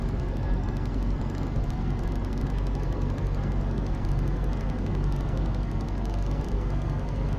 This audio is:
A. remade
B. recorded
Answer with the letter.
A